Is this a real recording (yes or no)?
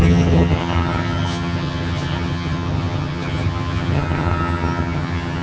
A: no